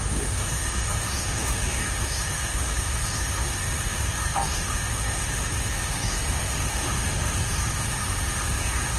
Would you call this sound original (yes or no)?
no